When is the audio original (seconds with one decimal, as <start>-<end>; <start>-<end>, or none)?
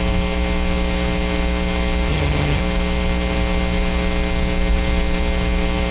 0.0-2.1; 2.6-5.9